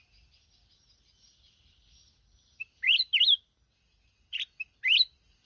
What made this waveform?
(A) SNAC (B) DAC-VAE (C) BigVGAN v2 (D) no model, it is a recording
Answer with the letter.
D